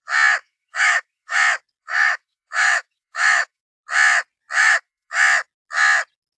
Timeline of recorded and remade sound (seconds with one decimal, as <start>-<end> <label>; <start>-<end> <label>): 0.0-0.4 recorded; 0.4-1.4 remade; 1.4-1.8 recorded; 1.8-3.6 remade; 3.6-4.6 recorded; 4.6-5.2 remade; 5.2-6.4 recorded